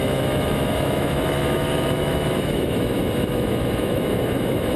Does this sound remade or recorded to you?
remade